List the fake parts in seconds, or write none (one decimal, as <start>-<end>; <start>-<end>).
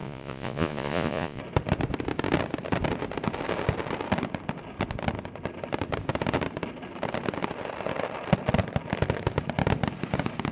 0.0-1.4